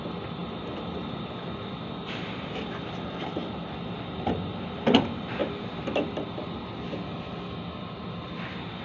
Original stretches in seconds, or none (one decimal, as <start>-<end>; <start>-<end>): 0.0-8.8